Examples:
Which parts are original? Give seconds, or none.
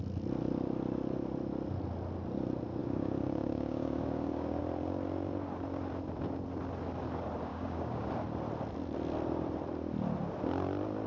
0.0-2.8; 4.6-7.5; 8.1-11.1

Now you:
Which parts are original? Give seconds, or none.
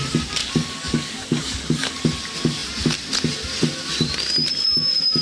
0.0-0.4; 2.0-5.2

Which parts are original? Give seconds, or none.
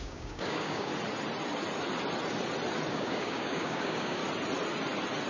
0.9-2.9; 4.2-5.3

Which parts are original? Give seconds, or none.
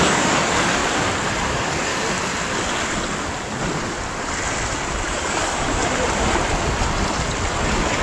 0.8-1.5; 1.9-5.1; 5.8-7.6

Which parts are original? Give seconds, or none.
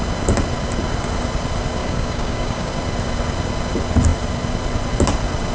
0.0-1.8; 2.7-5.5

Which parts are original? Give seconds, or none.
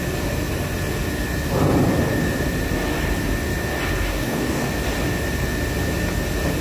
0.0-4.1; 4.7-6.6